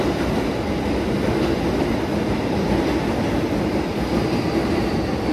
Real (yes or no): yes